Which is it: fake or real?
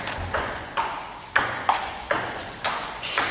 fake